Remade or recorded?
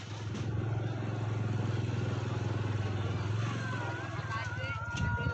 recorded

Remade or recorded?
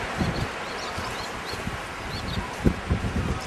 recorded